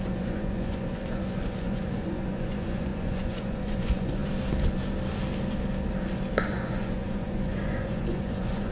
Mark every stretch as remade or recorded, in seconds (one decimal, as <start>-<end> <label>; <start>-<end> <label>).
0.0-4.2 remade; 4.2-6.4 recorded; 6.4-8.7 remade